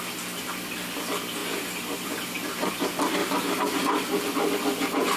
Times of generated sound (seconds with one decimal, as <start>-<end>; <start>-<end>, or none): 3.2-4.0